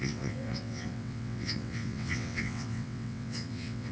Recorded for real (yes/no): no